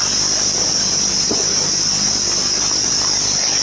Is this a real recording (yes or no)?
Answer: yes